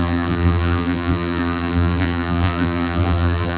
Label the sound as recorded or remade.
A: remade